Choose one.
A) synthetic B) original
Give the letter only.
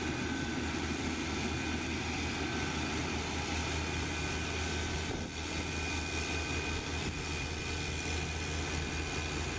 B